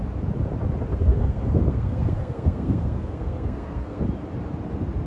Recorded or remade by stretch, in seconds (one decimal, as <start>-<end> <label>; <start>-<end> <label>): 0.0-0.9 recorded; 0.9-4.0 remade; 4.0-5.1 recorded